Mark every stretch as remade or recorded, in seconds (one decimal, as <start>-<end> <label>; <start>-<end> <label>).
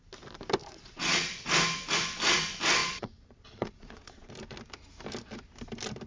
0.0-0.6 recorded; 0.6-1.5 remade; 1.5-2.8 recorded; 2.8-4.3 remade; 4.3-6.1 recorded